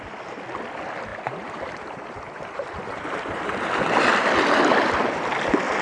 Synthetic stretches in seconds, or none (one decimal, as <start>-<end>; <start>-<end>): 1.1-3.7